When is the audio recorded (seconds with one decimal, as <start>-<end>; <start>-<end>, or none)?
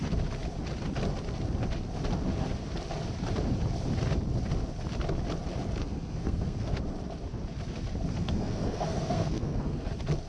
0.0-5.8; 6.8-8.1; 9.9-10.3